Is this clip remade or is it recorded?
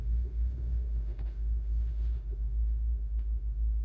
remade